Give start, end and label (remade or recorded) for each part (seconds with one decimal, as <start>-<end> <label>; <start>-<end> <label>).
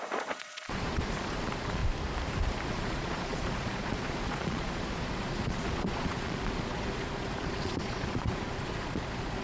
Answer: 0.0-1.8 remade; 1.8-2.7 recorded; 2.7-9.4 remade